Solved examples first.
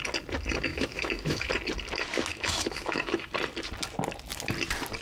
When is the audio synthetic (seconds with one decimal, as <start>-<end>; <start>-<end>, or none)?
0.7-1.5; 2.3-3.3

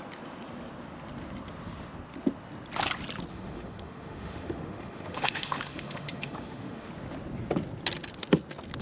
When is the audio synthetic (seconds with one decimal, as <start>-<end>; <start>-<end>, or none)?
3.3-6.9

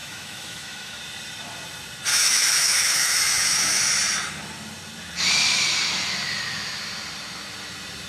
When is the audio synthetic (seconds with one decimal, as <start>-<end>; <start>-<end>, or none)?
0.0-1.0; 2.1-3.8

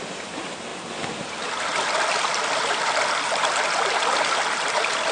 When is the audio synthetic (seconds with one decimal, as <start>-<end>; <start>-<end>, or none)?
none

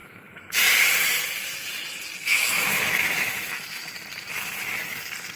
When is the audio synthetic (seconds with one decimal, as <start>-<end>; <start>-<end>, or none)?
0.0-0.6; 2.2-3.9

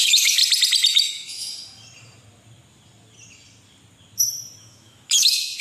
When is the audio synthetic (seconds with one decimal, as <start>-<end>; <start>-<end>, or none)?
0.0-0.4; 1.1-1.5; 4.6-5.6